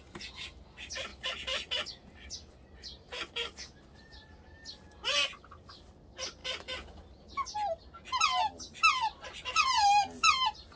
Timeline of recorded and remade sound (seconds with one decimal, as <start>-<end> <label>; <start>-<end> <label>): 0.0-10.8 recorded